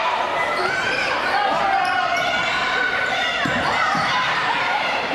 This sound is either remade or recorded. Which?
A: remade